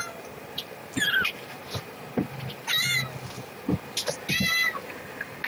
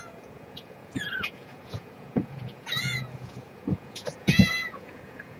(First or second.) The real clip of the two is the first